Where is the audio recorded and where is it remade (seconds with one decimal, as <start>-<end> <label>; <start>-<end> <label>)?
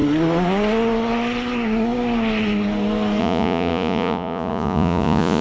0.0-3.2 recorded; 3.2-5.4 remade